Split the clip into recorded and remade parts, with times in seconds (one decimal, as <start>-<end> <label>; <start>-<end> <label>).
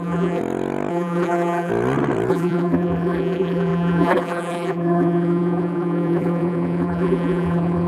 0.0-0.4 remade; 0.4-0.9 recorded; 0.9-1.7 remade; 1.7-2.3 recorded; 2.3-7.9 remade